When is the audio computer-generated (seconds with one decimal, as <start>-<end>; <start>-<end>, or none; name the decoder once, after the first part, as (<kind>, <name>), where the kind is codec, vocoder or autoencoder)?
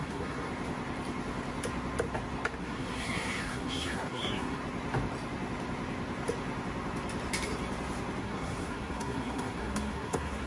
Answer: 0.0-0.5 (codec, SNAC); 2.6-4.6; 8.2-10.5